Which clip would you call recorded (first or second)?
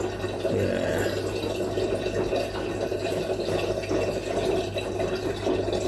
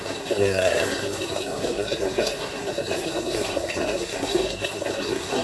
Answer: first